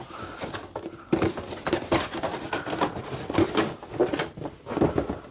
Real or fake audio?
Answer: real